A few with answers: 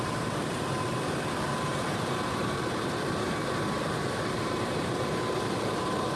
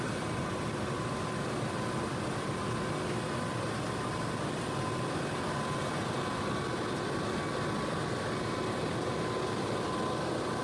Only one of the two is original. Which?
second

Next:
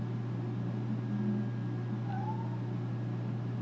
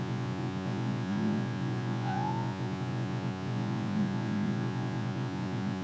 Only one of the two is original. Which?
first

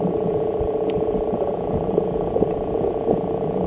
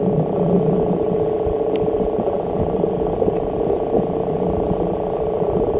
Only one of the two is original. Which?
second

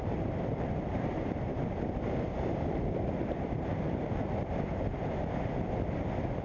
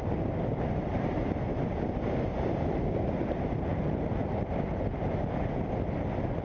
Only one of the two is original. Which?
second